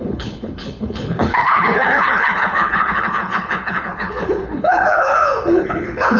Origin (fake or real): fake